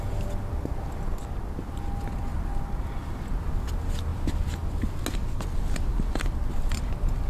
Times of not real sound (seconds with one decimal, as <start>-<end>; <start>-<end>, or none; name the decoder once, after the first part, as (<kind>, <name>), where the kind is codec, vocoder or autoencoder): none